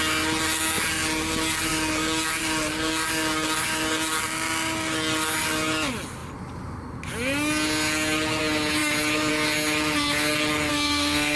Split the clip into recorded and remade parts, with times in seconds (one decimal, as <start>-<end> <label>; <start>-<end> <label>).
0.0-10.7 recorded; 10.7-11.4 remade